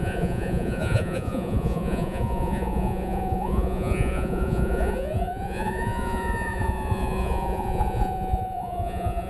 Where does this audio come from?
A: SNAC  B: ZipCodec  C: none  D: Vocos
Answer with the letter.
D